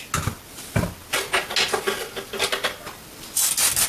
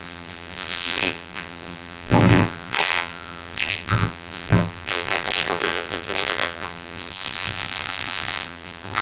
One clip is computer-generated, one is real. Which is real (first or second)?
first